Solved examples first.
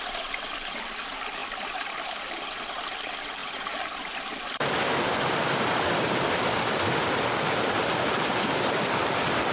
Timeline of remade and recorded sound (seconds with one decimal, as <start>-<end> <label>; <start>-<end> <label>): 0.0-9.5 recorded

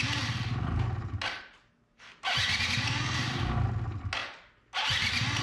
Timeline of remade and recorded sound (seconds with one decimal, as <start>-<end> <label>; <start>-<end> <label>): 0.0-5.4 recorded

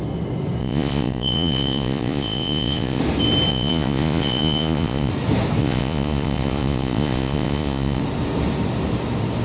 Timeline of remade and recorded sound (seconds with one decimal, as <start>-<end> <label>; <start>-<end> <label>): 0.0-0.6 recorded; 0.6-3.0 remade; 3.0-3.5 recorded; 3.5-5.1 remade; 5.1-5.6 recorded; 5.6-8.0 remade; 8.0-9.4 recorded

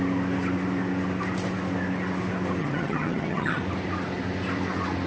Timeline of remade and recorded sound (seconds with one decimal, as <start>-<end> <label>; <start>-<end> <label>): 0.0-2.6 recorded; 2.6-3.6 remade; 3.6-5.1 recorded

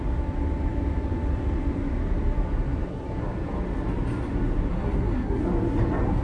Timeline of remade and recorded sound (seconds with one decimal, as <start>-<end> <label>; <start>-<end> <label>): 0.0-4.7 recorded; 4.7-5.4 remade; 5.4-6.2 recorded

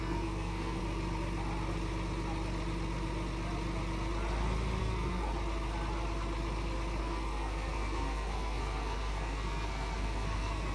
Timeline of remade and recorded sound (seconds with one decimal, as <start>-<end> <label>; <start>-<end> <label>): 0.0-0.8 remade; 0.8-4.8 recorded; 4.8-5.3 remade; 5.3-7.0 recorded; 7.0-10.7 remade

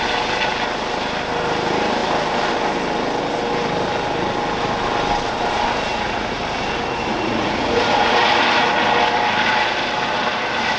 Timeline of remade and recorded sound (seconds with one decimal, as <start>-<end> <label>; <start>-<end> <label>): 0.0-5.9 recorded; 5.9-6.4 remade; 6.4-7.1 recorded; 7.1-8.7 remade; 8.7-10.8 recorded